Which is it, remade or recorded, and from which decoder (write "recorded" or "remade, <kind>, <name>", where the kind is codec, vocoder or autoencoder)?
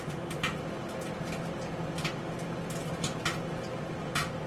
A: recorded